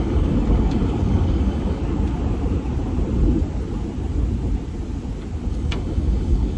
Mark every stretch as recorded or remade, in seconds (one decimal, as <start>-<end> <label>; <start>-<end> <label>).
0.0-1.8 remade; 1.8-5.5 recorded; 5.5-6.6 remade